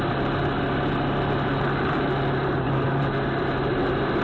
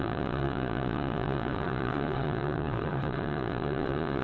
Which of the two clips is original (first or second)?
first